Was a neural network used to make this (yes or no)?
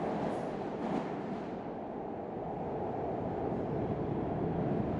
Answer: no